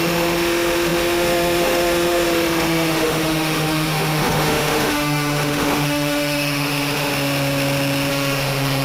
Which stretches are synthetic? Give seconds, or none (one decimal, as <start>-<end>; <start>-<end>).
0.0-7.1; 8.1-8.8